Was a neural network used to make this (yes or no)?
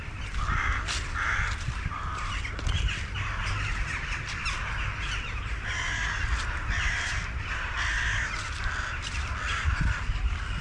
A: no